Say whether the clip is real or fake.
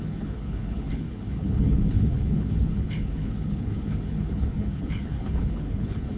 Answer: fake